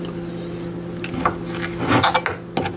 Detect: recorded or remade recorded